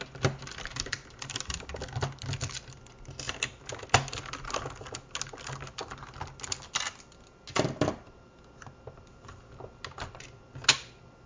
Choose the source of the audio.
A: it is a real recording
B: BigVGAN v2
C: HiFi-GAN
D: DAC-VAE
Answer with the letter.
A